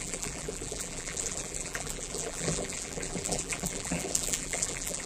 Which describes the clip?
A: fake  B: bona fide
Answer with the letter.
A